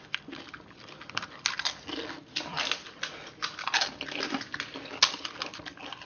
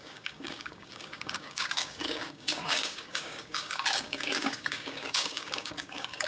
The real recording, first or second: first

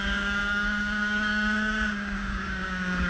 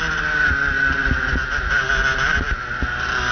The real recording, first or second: second